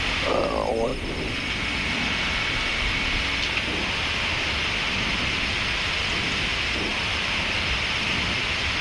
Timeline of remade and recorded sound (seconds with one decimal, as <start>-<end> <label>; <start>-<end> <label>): 0.0-3.7 recorded; 3.7-4.6 remade; 4.6-6.9 recorded; 6.9-8.8 remade

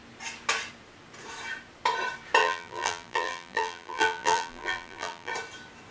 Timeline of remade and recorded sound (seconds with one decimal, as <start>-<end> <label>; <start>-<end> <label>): 0.0-2.4 recorded; 2.4-5.3 remade; 5.3-5.9 recorded

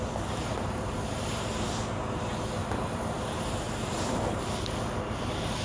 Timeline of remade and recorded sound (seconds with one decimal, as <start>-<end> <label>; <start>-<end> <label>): 0.0-0.5 recorded; 0.5-1.5 remade; 1.5-2.6 recorded; 2.6-4.4 remade; 4.4-5.6 recorded

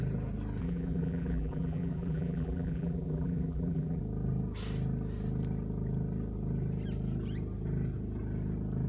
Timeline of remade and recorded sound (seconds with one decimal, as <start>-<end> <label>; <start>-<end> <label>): 0.0-0.6 recorded; 0.6-4.0 remade; 4.0-8.9 recorded

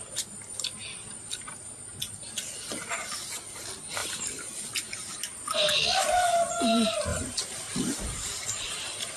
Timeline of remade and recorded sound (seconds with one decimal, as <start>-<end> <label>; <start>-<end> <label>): 0.0-0.8 remade; 0.8-3.3 recorded; 3.3-4.0 remade; 4.0-6.5 recorded; 6.5-9.2 remade

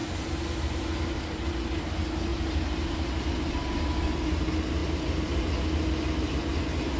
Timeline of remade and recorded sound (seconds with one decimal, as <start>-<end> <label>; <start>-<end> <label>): 0.0-2.3 recorded; 2.3-3.3 remade; 3.3-7.0 recorded

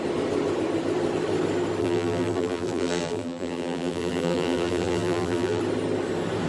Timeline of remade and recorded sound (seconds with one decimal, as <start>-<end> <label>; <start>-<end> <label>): 0.0-1.8 recorded; 1.8-5.6 remade; 5.6-6.5 recorded